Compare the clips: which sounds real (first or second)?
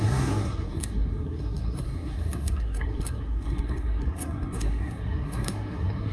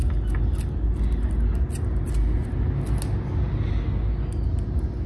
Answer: second